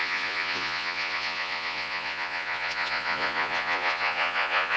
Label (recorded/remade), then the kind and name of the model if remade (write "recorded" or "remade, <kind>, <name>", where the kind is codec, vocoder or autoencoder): remade, vocoder, Vocos